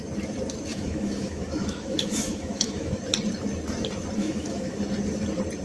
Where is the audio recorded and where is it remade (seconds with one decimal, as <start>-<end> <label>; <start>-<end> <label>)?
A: 0.0-0.7 recorded; 0.7-3.0 remade; 3.0-4.2 recorded; 4.2-4.8 remade; 4.8-5.6 recorded